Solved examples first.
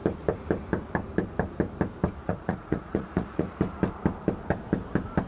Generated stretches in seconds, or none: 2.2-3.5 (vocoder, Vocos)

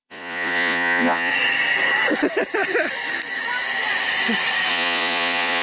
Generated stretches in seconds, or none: 0.0-1.3 (vocoder, Vocos); 4.7-5.6

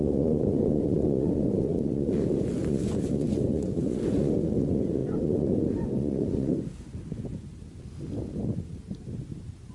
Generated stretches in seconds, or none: 0.0-7.5 (vocoder, Vocos)

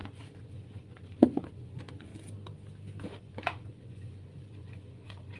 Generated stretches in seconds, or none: 0.0-2.1 (vocoder, Vocos); 3.2-5.4

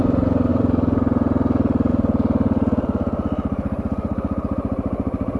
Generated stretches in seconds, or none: none